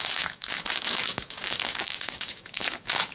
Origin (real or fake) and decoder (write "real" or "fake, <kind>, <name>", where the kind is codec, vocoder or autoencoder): fake, codec, DAC